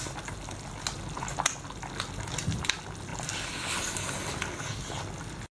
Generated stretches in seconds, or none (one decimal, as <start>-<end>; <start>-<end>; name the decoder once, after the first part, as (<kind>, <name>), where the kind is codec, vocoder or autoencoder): none